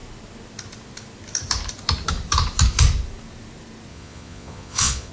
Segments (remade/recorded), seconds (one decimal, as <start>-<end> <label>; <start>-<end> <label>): 0.0-3.9 recorded; 3.9-5.1 remade